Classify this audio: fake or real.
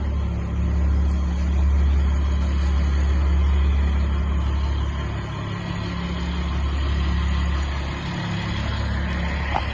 real